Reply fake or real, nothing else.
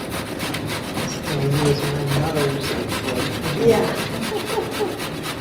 real